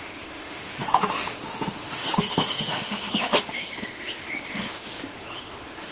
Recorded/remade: remade